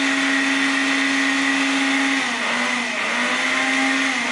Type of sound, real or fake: real